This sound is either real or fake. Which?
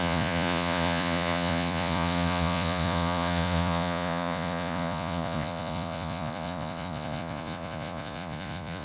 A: fake